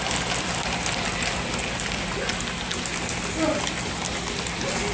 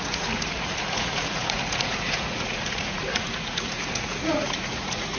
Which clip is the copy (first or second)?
second